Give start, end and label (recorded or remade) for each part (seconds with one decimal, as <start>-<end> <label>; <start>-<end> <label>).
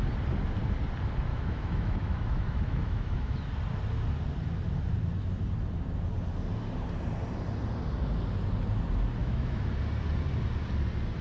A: 0.0-1.3 recorded; 1.3-3.5 remade; 3.5-9.2 recorded; 9.2-9.7 remade; 9.7-11.2 recorded